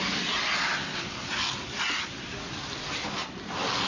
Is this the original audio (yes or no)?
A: yes